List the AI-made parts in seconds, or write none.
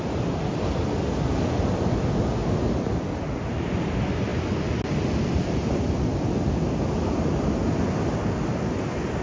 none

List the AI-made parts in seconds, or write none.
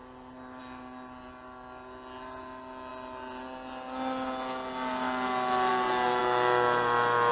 none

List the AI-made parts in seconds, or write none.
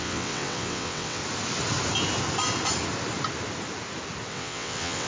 0.0-1.2; 4.3-5.1